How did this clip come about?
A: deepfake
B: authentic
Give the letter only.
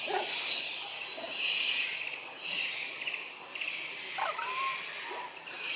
B